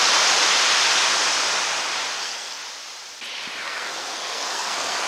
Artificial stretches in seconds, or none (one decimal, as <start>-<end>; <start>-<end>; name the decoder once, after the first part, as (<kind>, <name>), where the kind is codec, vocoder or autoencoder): 2.2-2.6 (codec, SNAC); 3.6-5.1